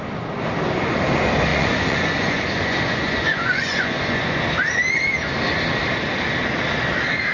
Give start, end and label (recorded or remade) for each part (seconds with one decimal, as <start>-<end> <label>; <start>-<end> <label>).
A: 0.0-1.5 recorded; 1.5-4.4 remade; 4.4-7.3 recorded